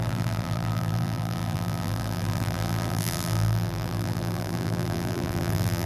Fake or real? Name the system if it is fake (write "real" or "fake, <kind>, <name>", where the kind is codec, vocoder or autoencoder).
fake, vocoder, BigVGAN v2